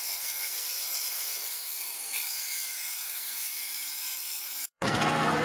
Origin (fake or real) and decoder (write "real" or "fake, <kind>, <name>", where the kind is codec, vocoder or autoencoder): fake, codec, SNAC